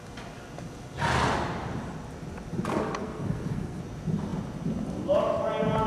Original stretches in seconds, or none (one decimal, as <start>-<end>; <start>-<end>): 0.0-2.7; 3.8-5.9